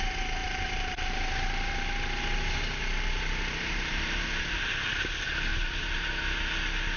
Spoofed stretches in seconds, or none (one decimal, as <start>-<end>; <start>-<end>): 0.4-4.6; 5.5-6.4